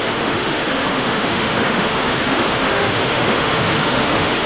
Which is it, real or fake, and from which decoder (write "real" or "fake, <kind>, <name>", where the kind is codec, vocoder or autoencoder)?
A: fake, autoencoder, DAC-VAE